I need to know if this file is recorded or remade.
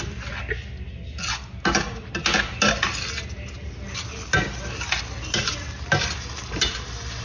recorded